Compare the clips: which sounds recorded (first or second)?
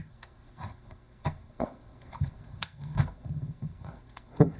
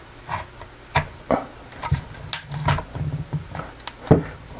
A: second